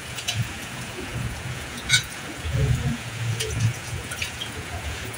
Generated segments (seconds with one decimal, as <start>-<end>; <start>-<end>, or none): 0.0-5.2